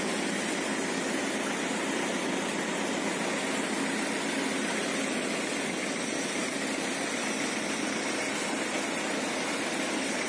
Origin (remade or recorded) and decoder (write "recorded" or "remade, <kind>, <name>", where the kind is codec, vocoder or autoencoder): recorded